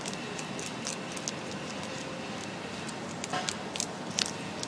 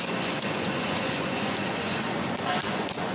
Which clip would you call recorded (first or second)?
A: first